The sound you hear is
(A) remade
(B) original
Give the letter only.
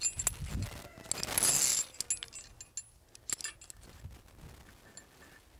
B